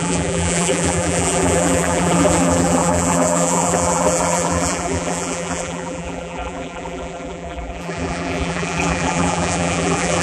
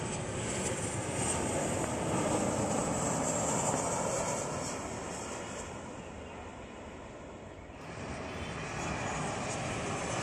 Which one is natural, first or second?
second